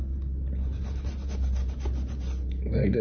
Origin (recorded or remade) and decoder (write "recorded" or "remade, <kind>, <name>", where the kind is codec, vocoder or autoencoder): recorded